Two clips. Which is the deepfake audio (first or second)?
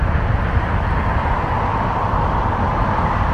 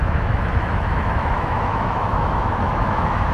second